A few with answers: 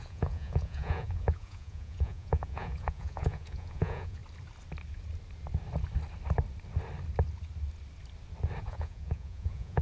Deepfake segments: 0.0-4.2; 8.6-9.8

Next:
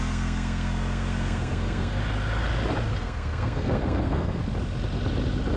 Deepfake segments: 0.0-2.0; 3.0-4.4

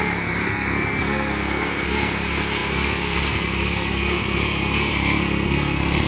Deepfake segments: 0.0-6.1